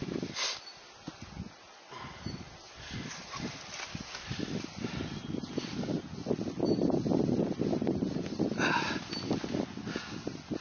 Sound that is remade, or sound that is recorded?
recorded